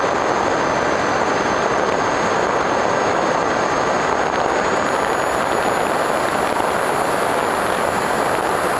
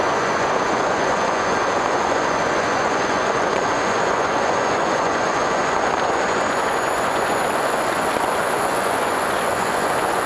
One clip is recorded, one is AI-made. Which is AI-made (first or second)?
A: second